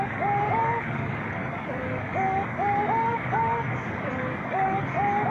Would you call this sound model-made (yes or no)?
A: yes